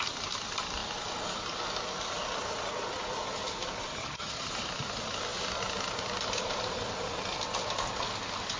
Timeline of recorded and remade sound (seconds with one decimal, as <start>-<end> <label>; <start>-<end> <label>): 0.0-4.0 recorded; 4.0-4.5 remade; 4.5-8.6 recorded